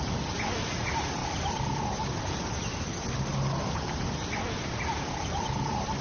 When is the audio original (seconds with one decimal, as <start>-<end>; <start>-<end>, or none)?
0.0-6.0